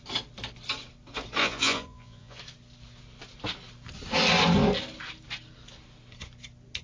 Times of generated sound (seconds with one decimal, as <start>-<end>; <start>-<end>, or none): 1.4-2.4